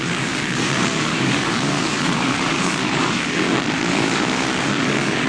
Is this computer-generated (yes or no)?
yes